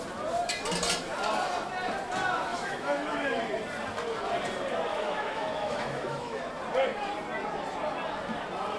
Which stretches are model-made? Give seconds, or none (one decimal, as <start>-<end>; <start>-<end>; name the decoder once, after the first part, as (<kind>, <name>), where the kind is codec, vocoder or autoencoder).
2.5-3.4 (autoencoder, DAC-VAE); 4.9-6.4